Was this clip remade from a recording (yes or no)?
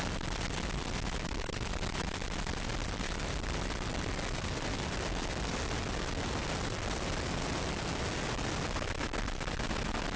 no